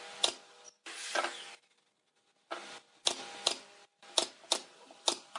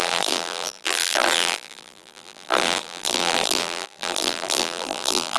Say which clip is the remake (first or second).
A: second